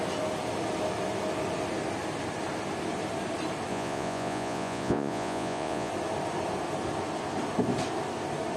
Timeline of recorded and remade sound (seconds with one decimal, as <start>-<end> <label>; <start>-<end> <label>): 0.0-3.7 recorded; 3.7-5.9 remade; 5.9-8.6 recorded